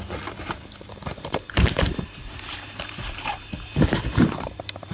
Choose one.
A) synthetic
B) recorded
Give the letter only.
A